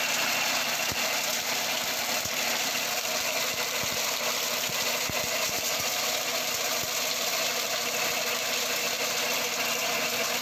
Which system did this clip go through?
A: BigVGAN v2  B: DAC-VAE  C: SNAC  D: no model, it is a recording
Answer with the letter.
D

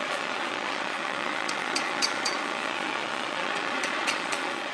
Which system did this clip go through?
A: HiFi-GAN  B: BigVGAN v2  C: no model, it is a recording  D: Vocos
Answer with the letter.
D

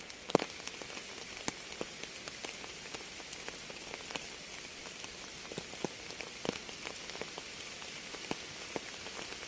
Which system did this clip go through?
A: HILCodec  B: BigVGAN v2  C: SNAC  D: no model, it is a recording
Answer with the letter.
D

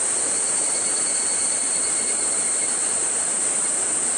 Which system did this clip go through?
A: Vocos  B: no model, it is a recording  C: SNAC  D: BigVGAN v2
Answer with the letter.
D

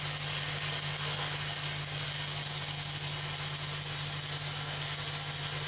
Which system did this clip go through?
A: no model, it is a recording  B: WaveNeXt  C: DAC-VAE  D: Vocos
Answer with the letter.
A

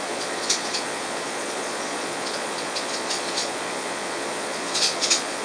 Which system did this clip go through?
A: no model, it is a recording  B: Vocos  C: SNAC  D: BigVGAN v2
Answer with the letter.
B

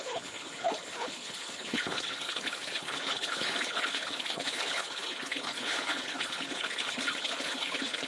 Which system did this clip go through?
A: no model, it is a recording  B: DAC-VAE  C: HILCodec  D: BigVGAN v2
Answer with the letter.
C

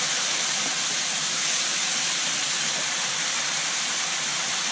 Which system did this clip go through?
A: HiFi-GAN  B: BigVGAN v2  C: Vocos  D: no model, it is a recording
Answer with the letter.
B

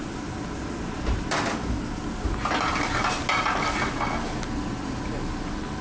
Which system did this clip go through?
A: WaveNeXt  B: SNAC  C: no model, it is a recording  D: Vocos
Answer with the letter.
C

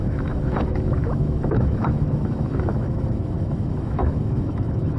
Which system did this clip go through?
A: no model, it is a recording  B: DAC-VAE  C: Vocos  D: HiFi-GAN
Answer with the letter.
B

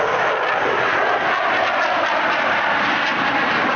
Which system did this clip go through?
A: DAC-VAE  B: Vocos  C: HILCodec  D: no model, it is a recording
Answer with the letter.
D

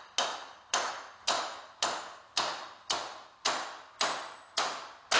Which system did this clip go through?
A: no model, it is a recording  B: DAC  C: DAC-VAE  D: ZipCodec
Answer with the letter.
A